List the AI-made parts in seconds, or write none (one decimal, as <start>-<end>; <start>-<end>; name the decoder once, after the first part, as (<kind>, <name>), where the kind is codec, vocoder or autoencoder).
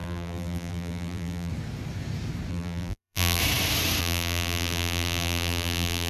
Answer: 0.0-1.5 (vocoder, BigVGAN v2); 2.5-3.4; 4.0-6.1